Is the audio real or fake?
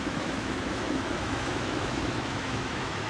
fake